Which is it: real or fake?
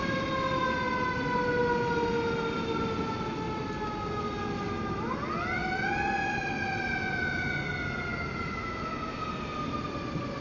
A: real